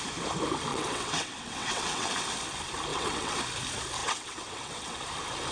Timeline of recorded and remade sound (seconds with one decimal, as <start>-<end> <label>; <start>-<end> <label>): 0.0-0.7 recorded; 0.7-2.1 remade; 2.1-2.9 recorded; 2.9-3.4 remade; 3.4-4.0 recorded; 4.0-5.0 remade; 5.0-5.5 recorded